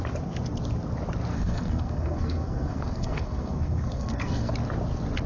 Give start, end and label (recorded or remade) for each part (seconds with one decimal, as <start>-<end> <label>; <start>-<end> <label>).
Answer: 0.0-1.3 recorded; 1.3-4.5 remade; 4.5-5.3 recorded